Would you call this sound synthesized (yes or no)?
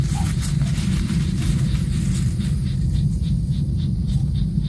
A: no